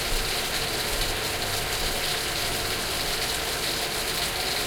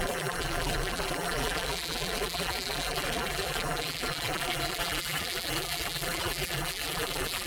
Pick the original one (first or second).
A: first